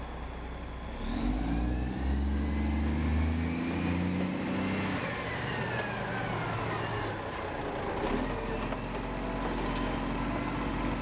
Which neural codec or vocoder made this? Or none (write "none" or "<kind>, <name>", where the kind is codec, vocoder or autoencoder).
none